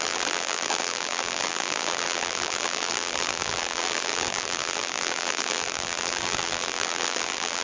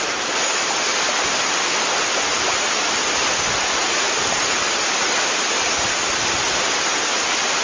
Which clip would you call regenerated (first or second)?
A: first